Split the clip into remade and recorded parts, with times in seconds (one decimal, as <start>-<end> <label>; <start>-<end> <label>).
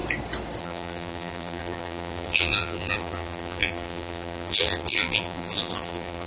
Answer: 0.0-0.6 recorded; 0.6-6.3 remade